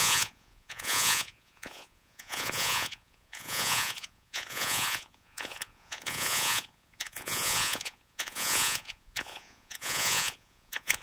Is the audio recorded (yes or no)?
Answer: no